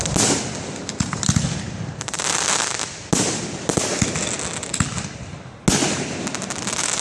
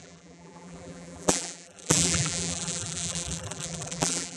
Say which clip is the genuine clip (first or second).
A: first